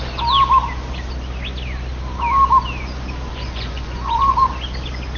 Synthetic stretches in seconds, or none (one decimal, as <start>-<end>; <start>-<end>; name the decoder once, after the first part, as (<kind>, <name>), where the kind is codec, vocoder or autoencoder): 3.3-4.5 (vocoder, Vocos)